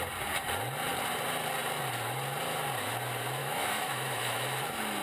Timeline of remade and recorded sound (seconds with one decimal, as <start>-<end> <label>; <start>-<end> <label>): 0.0-3.4 recorded; 3.4-4.6 remade; 4.6-5.0 recorded